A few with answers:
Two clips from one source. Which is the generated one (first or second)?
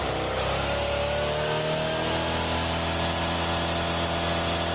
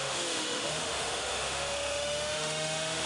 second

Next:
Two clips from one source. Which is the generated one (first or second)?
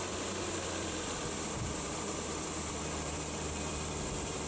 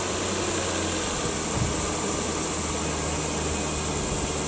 first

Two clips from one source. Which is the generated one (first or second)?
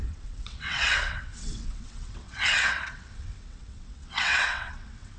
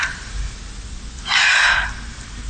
first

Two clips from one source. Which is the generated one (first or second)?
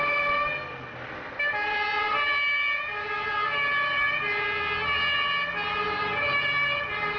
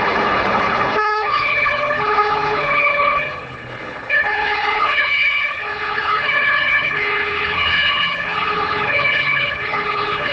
second